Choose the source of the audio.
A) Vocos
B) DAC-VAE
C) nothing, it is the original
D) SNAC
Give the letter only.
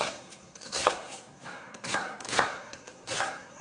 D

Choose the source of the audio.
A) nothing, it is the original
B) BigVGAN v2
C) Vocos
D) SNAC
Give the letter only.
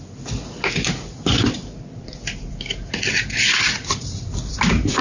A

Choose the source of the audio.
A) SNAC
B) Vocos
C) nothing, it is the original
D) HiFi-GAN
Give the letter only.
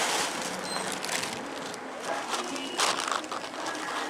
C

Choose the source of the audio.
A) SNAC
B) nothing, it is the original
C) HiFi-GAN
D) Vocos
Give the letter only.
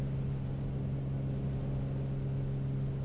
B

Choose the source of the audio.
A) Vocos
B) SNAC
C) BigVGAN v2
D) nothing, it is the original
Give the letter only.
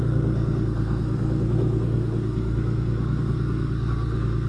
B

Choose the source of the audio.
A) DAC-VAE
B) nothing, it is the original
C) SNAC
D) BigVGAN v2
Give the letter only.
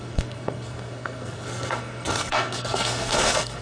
C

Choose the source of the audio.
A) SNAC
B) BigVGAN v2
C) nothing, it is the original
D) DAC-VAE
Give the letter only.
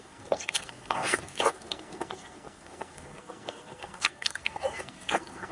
A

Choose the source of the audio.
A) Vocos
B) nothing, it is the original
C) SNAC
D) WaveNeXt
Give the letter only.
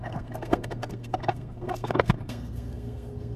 C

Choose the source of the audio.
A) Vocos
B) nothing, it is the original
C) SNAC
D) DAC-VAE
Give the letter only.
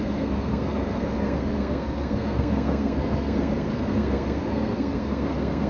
C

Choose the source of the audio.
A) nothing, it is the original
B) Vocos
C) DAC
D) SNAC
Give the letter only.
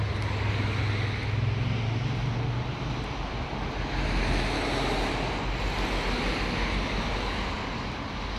A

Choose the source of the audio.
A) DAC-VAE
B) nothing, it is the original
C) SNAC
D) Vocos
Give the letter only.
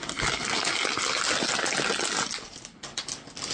B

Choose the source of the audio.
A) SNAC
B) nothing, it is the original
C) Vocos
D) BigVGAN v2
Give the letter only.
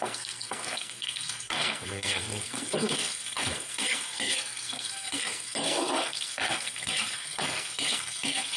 A